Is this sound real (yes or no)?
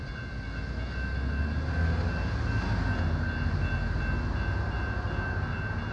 yes